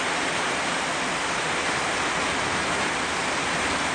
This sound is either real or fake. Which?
real